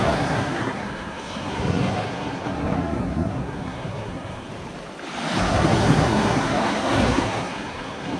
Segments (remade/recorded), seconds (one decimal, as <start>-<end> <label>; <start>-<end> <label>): 0.0-4.5 remade; 4.5-5.4 recorded; 5.4-8.2 remade